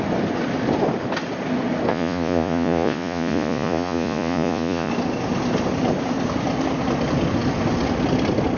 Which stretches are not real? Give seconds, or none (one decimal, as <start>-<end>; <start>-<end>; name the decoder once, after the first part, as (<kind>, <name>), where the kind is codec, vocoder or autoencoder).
1.9-4.9 (vocoder, Vocos)